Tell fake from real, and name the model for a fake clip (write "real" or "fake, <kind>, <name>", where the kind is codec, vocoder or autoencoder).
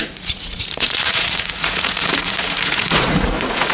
fake, vocoder, Vocos